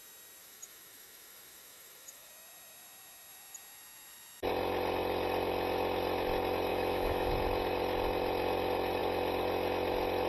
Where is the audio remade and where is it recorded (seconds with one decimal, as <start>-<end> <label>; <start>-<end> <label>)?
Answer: 0.0-0.4 recorded; 0.4-2.3 remade; 2.3-6.7 recorded; 6.7-7.3 remade; 7.3-10.3 recorded